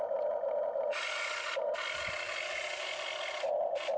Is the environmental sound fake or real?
real